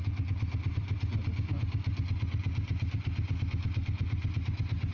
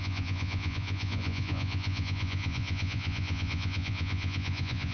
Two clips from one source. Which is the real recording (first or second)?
first